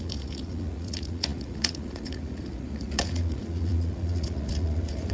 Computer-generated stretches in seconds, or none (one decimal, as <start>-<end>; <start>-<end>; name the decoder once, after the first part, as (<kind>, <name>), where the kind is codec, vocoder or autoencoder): 0.0-5.1 (vocoder, Vocos)